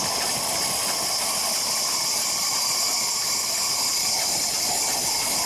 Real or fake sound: real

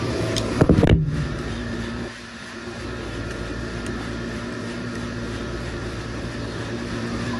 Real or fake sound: fake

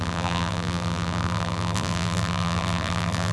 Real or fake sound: fake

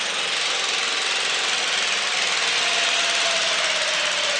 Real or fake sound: real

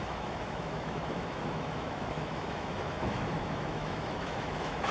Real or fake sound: fake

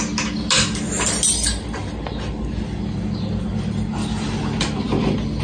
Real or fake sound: real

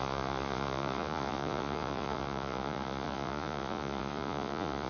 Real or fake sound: fake